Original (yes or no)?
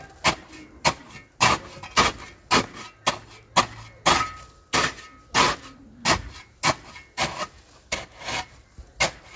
yes